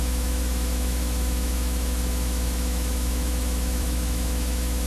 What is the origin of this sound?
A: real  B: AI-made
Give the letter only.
B